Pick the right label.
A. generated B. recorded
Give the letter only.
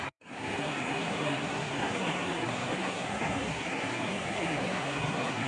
A